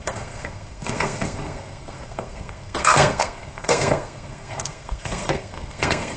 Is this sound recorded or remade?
remade